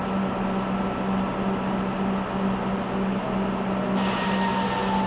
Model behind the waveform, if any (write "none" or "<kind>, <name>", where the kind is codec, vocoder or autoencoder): none